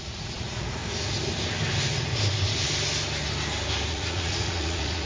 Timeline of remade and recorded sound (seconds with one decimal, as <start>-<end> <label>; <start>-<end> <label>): 0.0-0.8 remade; 0.8-3.9 recorded; 3.9-5.1 remade